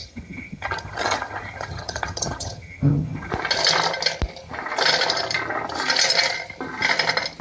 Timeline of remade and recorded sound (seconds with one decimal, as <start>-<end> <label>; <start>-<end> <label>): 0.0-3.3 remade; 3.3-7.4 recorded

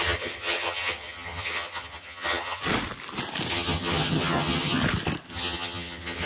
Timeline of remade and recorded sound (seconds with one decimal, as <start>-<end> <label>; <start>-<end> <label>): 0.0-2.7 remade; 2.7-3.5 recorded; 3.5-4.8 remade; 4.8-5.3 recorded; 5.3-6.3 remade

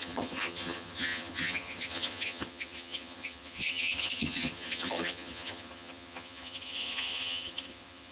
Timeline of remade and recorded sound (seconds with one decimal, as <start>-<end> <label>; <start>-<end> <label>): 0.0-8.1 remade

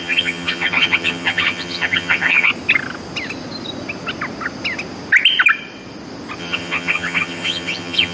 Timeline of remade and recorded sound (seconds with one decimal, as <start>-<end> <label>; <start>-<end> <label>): 0.0-2.5 remade; 2.5-6.4 recorded; 6.4-8.1 remade